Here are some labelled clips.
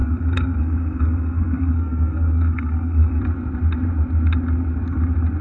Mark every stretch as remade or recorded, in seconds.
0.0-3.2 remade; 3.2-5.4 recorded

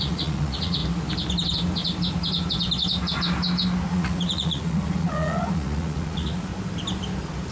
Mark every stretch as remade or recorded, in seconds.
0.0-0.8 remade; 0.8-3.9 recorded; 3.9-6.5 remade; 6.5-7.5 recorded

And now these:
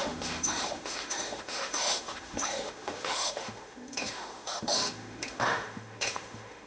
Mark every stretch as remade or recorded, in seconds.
0.0-6.7 remade

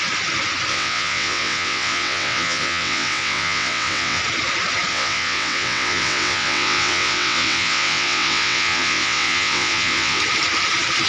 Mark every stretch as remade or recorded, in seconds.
0.0-0.7 recorded; 0.7-4.2 remade; 4.2-4.9 recorded; 4.9-10.2 remade; 10.2-11.1 recorded

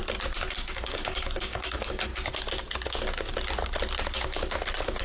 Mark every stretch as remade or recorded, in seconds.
0.0-0.7 recorded; 0.7-2.1 remade; 2.1-5.0 recorded

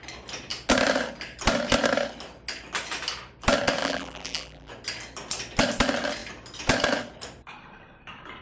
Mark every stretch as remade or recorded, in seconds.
0.0-3.8 recorded; 3.8-4.7 remade; 4.7-8.4 recorded